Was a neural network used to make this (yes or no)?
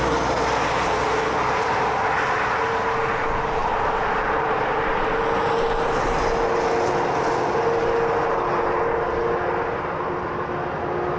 no